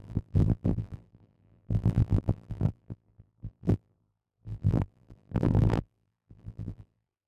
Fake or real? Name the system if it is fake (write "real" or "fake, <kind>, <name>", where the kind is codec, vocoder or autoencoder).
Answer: fake, vocoder, BigVGAN v2